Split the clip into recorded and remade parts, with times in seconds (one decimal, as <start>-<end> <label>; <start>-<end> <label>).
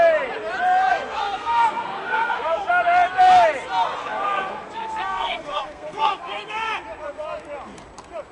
0.0-0.9 recorded; 0.9-2.7 remade; 2.7-4.0 recorded; 4.0-6.7 remade; 6.7-8.3 recorded